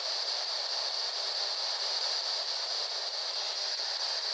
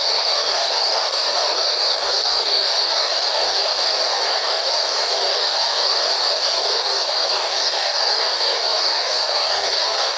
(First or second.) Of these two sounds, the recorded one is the first